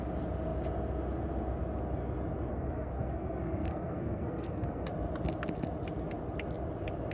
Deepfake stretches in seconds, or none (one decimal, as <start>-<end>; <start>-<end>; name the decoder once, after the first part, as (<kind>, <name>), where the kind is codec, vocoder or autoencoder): 2.5-4.9 (codec, SNAC)